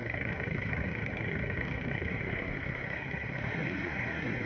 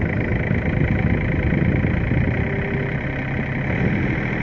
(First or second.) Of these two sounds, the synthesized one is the first